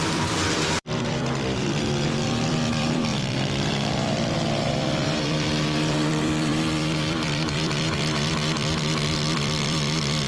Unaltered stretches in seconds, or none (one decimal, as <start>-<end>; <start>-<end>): none